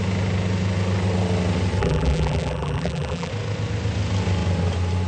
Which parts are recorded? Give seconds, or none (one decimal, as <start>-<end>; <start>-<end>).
0.0-1.8; 3.3-5.1

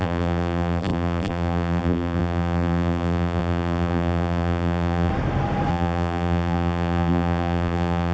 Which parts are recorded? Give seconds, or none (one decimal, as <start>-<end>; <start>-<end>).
5.1-5.7

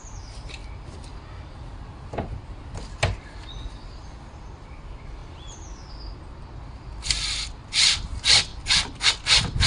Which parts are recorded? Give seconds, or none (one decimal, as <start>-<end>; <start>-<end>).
8.5-9.2

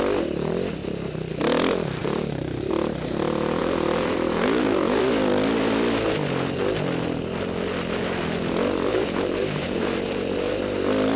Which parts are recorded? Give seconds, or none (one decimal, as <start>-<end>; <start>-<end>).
0.0-0.8; 1.3-2.0; 2.7-3.6; 5.0-8.9; 10.6-11.2